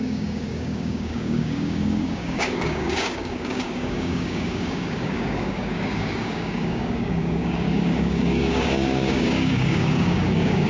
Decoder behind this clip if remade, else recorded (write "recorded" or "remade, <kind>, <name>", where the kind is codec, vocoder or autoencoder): remade, codec, DAC